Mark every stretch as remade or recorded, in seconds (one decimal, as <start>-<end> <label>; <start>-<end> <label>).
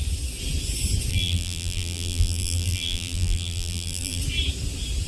0.0-1.1 recorded; 1.1-4.2 remade; 4.2-5.1 recorded